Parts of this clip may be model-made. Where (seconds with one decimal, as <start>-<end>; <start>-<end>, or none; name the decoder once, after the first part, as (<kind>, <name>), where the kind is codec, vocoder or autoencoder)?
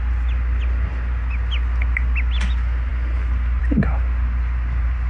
none